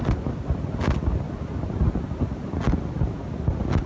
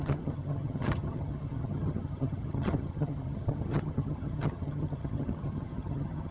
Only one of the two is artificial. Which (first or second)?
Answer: second